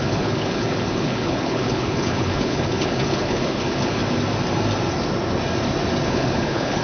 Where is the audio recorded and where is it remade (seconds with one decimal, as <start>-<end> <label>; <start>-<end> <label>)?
0.0-4.0 remade; 4.0-6.0 recorded; 6.0-6.8 remade